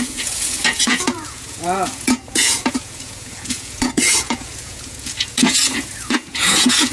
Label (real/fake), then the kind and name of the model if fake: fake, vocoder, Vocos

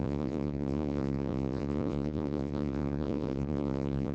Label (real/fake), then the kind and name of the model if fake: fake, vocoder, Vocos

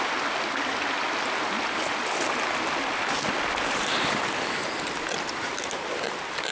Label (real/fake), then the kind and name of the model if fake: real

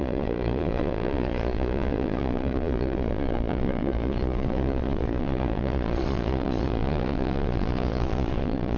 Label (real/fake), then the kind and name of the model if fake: fake, vocoder, Vocos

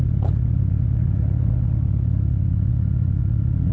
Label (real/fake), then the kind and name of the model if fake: fake, vocoder, Vocos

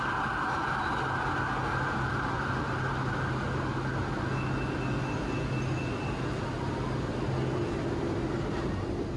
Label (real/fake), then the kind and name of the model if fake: real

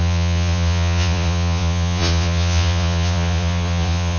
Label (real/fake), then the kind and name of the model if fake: fake, vocoder, Vocos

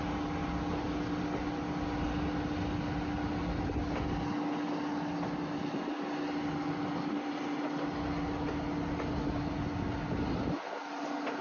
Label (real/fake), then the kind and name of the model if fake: real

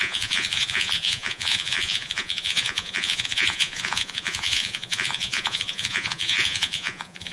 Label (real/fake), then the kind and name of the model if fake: fake, vocoder, Vocos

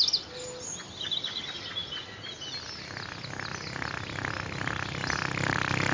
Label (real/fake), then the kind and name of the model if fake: real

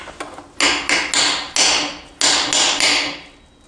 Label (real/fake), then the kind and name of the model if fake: real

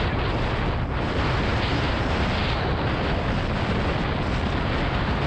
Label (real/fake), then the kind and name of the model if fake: real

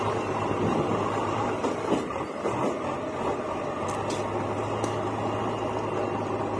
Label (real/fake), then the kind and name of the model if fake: real